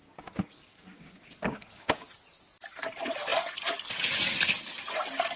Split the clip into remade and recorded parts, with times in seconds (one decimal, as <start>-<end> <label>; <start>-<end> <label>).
0.0-2.1 remade; 2.1-5.4 recorded